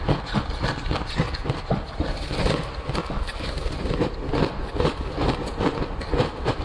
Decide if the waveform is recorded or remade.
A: recorded